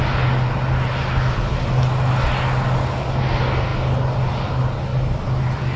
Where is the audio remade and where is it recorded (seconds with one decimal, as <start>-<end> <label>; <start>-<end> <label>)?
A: 0.0-4.9 recorded; 4.9-5.8 remade